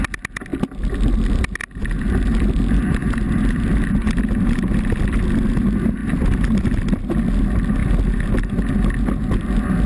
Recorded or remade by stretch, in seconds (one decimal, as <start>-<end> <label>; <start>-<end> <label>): 0.0-6.0 recorded; 6.0-6.7 remade; 6.7-9.9 recorded